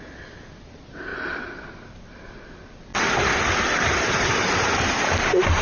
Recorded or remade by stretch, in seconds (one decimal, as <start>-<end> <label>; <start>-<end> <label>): 0.0-1.1 recorded; 1.1-4.5 remade; 4.5-5.6 recorded